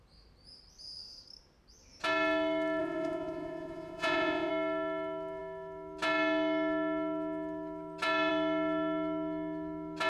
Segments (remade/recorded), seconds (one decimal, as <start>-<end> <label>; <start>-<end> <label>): 0.0-2.8 recorded; 2.8-4.5 remade; 4.5-10.1 recorded